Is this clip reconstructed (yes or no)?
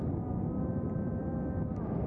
no